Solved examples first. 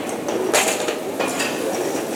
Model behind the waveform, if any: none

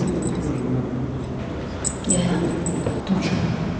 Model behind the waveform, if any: none